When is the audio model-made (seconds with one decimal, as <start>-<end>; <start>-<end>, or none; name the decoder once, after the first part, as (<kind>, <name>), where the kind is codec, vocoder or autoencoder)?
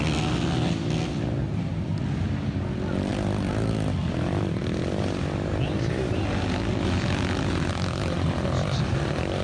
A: 1.4-2.0 (vocoder, BigVGAN v2)